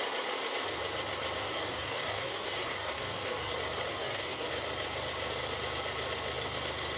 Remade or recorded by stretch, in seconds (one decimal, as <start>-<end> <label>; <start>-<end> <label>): 0.0-1.4 recorded; 1.4-3.5 remade; 3.5-3.9 recorded; 3.9-4.5 remade; 4.5-7.0 recorded